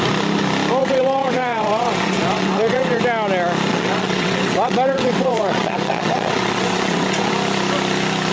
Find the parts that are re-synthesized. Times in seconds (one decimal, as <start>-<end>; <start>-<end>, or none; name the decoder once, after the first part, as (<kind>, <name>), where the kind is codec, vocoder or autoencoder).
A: 0.8-3.0 (vocoder, WaveNeXt); 3.7-7.3